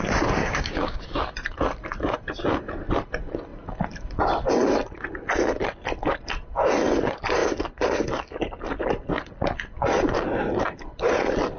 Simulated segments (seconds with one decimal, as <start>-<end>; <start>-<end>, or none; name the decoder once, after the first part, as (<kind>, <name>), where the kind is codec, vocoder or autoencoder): 0.4-1.0 (codec, DAC)